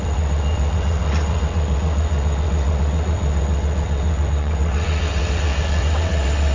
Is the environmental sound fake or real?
fake